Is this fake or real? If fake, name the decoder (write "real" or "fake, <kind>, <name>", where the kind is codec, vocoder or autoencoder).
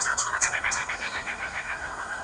fake, codec, SNAC